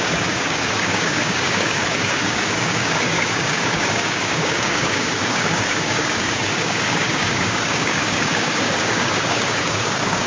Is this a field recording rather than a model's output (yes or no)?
no